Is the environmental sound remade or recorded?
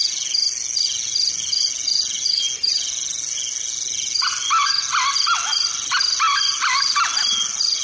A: recorded